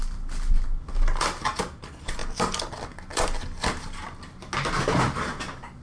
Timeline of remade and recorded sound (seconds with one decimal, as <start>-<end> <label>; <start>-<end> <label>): 0.0-5.8 recorded